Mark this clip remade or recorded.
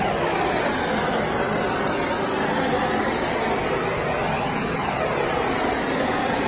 recorded